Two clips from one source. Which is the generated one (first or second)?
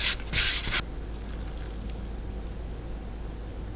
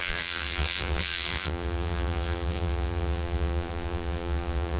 second